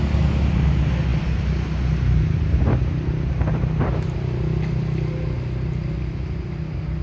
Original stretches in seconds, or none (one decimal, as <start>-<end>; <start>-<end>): 0.0-7.0